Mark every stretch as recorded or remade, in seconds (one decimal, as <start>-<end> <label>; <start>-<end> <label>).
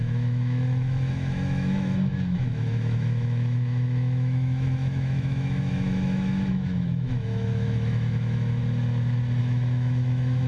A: 0.0-8.6 remade; 8.6-9.4 recorded; 9.4-10.5 remade